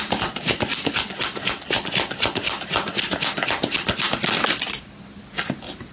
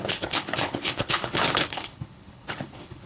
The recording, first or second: first